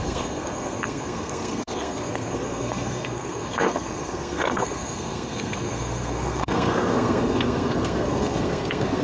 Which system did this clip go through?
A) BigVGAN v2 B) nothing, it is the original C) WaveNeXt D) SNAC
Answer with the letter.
D